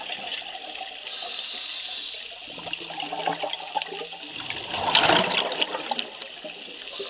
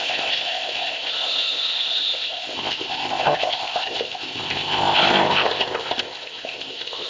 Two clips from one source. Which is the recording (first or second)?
first